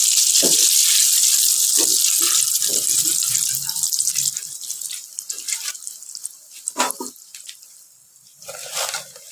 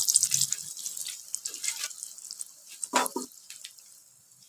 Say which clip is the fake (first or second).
first